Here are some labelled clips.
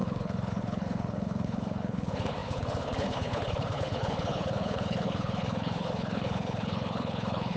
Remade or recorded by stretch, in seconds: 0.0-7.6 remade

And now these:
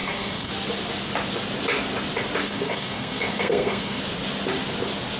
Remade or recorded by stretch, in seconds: 0.0-0.5 remade; 0.5-2.4 recorded; 2.4-4.0 remade; 4.0-5.2 recorded

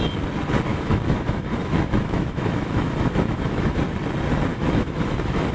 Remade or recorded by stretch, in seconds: 0.0-0.7 recorded; 0.7-3.8 remade; 3.8-4.5 recorded; 4.5-5.5 remade

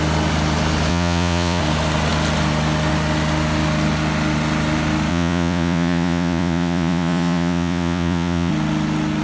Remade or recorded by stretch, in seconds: 0.0-0.9 recorded; 0.9-1.6 remade; 1.6-5.1 recorded; 5.1-8.5 remade; 8.5-9.2 recorded